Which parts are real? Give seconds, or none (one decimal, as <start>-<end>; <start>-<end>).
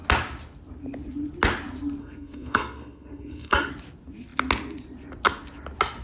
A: 0.0-2.0; 3.7-6.0